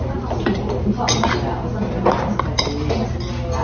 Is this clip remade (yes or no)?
no